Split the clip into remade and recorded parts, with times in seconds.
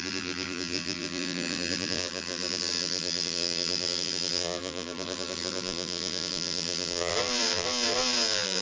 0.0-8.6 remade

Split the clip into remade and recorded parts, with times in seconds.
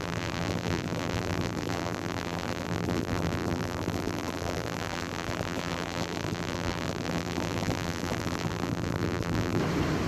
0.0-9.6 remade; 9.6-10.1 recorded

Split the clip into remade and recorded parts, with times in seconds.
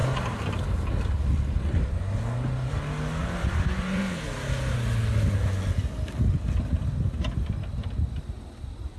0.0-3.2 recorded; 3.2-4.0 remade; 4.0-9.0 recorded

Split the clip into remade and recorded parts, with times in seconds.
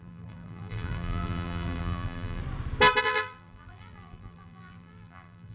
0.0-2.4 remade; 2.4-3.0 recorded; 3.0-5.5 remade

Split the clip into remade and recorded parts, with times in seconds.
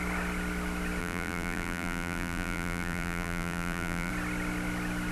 0.0-1.0 recorded; 1.0-4.1 remade; 4.1-5.1 recorded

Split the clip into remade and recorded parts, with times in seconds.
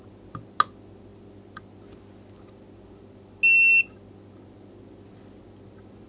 0.0-6.1 recorded